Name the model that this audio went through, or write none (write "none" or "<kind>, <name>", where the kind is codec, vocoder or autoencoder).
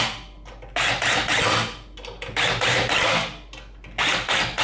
none